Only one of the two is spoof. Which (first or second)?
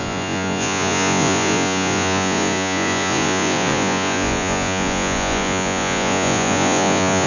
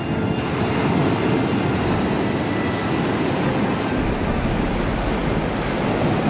first